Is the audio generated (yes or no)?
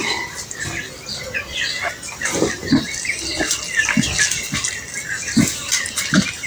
no